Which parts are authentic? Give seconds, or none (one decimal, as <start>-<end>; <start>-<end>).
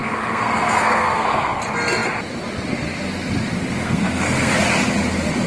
1.6-3.8; 4.5-5.5